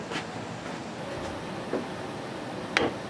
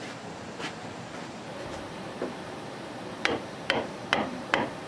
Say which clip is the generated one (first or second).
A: second